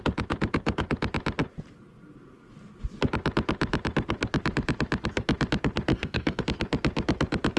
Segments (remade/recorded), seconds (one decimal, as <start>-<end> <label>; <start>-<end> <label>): 0.0-5.9 recorded; 5.9-6.4 remade; 6.4-7.6 recorded